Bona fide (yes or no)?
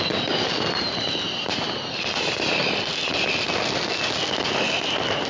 yes